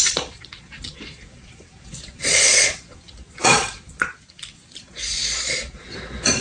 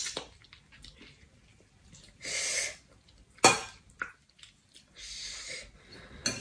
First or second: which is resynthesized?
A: first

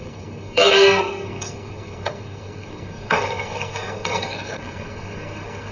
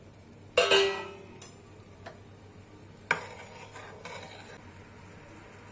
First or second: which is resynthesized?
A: first